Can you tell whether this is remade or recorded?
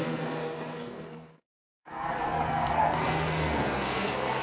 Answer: remade